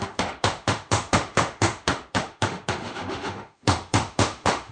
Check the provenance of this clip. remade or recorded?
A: remade